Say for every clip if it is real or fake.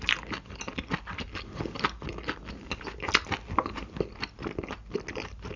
real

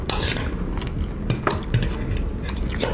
real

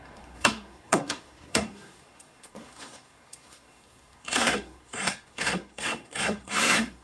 fake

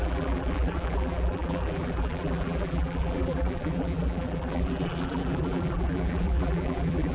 fake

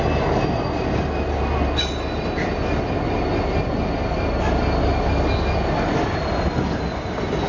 real